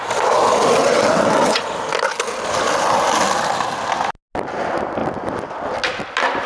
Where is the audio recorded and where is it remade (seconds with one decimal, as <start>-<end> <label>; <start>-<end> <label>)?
0.0-0.8 recorded; 0.8-1.6 remade; 1.6-6.5 recorded